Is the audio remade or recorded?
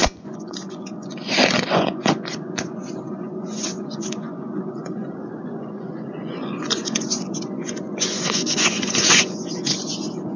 remade